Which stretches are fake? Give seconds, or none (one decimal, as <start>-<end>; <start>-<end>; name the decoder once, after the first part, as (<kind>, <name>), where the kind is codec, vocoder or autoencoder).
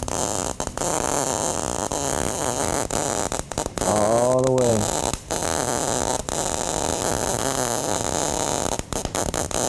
none